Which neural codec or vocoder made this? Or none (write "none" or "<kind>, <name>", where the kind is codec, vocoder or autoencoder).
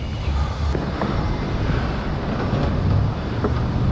none